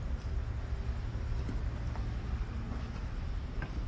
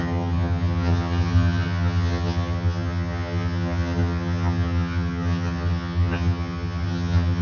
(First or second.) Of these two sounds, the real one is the first